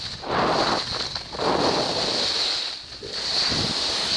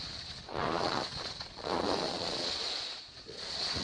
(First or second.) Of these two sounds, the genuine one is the first